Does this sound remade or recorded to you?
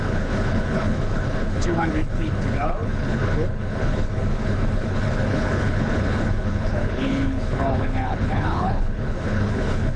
remade